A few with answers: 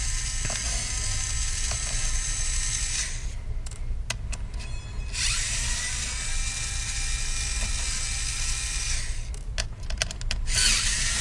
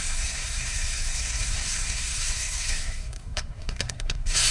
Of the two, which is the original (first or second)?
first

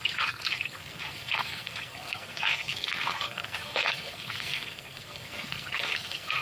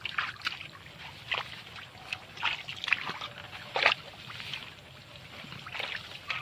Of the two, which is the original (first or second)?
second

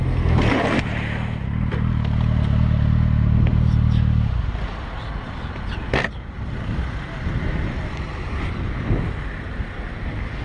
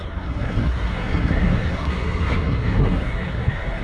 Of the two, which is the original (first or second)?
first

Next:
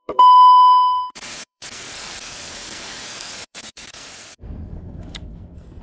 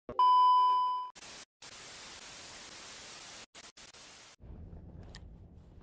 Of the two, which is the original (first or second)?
second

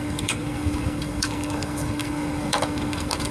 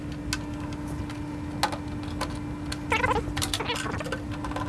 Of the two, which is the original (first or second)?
second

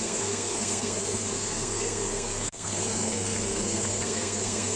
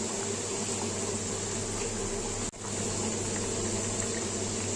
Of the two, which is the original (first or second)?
second